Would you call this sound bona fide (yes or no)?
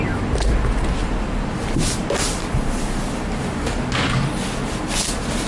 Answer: yes